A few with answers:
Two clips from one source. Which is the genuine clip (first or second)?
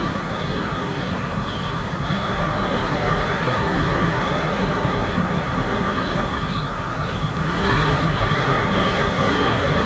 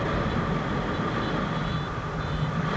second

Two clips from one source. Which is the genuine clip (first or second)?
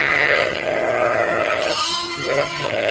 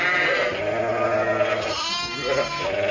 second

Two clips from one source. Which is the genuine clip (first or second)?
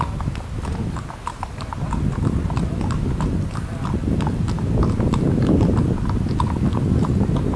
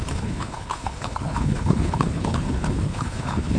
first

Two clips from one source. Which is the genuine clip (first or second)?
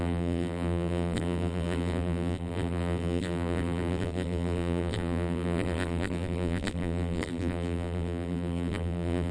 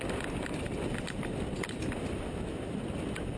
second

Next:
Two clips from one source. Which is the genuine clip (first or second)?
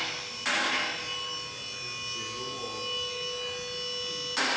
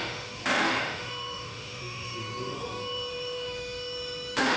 first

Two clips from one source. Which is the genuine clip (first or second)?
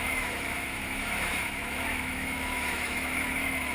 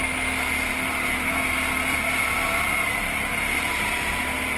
second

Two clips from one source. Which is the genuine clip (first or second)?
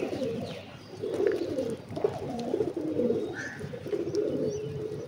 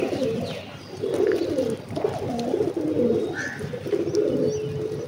second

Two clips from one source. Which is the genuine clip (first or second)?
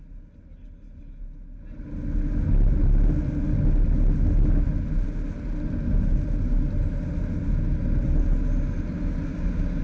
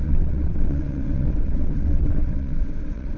first